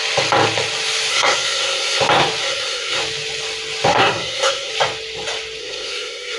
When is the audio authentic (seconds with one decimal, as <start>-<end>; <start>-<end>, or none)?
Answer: 0.0-1.1; 2.0-2.4; 3.0-3.9; 4.7-5.6